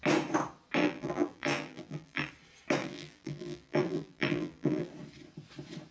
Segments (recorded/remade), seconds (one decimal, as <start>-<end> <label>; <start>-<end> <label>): 0.0-0.8 recorded; 0.8-2.3 remade; 2.3-2.8 recorded; 2.8-4.9 remade; 4.9-5.9 recorded